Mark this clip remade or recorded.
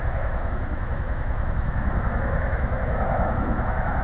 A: remade